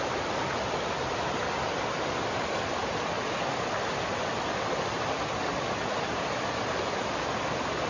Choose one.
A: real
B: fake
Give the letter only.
A